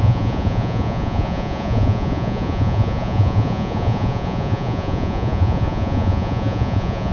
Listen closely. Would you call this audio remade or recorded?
remade